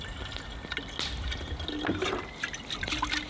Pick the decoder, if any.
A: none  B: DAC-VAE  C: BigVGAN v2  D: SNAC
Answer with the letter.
A